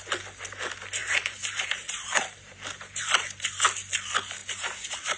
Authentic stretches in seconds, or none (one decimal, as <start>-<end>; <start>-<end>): 0.0-1.0; 3.0-4.4